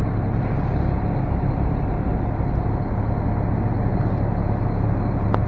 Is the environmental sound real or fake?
real